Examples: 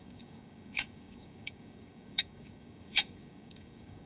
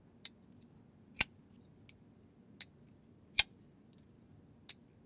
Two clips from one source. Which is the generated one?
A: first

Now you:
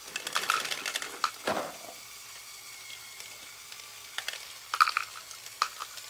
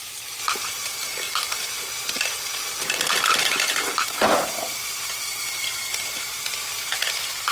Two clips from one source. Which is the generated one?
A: second